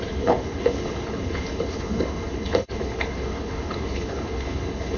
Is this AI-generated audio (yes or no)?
yes